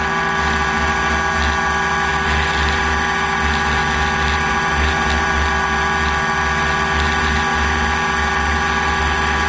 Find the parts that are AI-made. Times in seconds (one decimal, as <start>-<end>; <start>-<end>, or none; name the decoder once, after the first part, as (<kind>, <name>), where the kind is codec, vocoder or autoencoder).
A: none